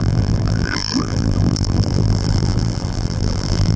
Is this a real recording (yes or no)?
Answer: no